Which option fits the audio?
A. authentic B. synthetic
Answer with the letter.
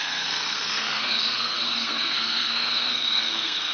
B